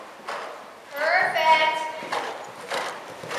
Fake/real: real